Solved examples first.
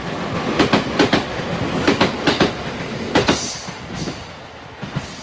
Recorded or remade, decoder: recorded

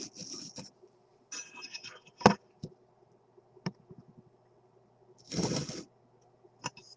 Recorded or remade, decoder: recorded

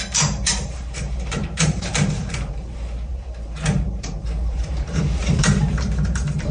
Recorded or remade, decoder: remade, vocoder, BigVGAN v2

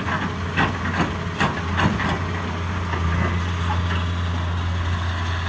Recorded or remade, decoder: recorded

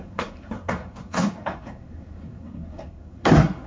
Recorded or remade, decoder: remade, codec, SNAC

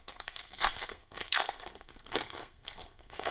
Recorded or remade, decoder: remade, codec, SNAC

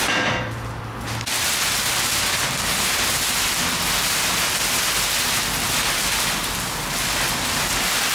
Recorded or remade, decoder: recorded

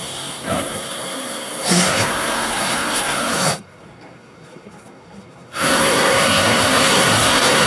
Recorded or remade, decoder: remade, codec, SNAC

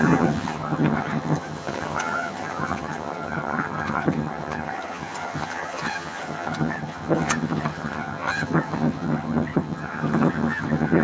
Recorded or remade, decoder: remade, vocoder, HiFi-GAN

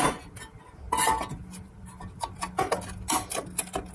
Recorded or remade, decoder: recorded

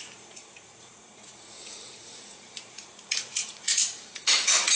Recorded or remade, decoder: remade, vocoder, Vocos